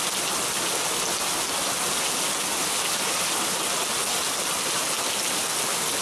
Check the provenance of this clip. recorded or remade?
recorded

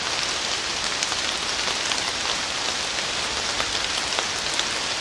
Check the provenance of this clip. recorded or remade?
recorded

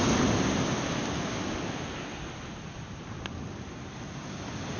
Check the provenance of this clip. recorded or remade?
recorded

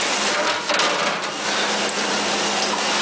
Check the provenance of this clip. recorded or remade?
recorded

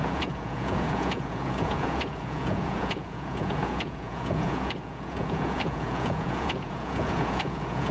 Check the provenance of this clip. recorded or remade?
remade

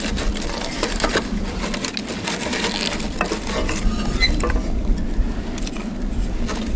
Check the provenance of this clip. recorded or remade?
recorded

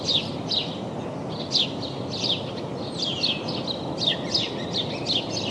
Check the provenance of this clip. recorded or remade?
recorded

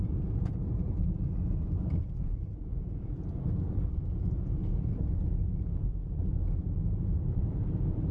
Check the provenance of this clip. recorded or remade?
remade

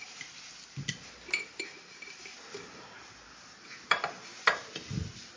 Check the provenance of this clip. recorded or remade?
recorded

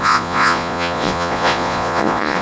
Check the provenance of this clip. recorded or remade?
remade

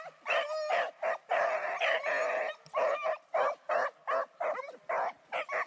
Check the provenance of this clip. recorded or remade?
recorded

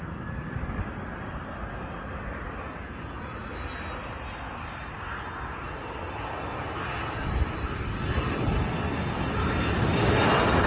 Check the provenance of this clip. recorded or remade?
recorded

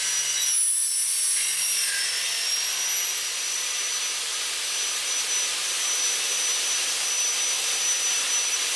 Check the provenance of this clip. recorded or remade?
recorded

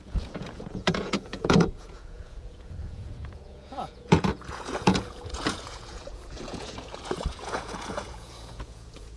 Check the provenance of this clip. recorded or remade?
remade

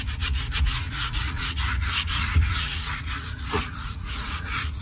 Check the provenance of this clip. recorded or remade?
remade